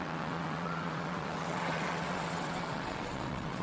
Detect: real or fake fake